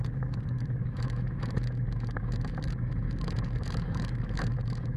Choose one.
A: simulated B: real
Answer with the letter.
A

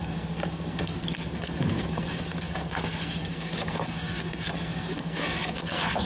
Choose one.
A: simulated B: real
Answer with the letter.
A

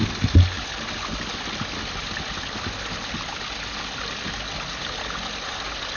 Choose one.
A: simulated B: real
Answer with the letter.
B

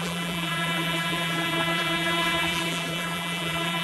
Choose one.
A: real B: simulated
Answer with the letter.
B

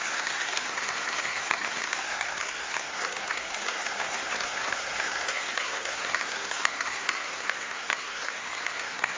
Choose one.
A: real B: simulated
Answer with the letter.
B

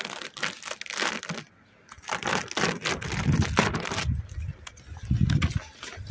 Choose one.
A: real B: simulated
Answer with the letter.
A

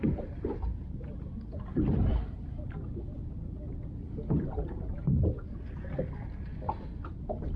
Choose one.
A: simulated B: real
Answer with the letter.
B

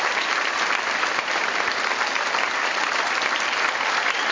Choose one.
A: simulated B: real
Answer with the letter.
A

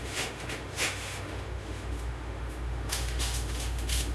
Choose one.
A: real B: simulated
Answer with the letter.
B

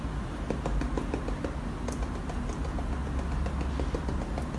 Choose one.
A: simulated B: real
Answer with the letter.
B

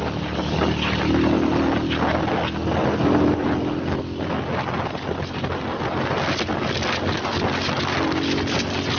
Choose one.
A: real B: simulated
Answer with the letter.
A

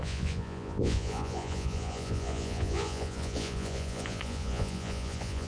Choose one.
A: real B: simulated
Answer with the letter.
B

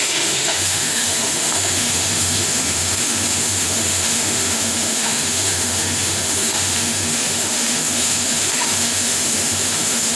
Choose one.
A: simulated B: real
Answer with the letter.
A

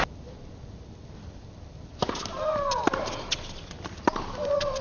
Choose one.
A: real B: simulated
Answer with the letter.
A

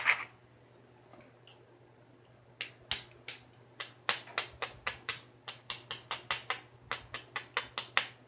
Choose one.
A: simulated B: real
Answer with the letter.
B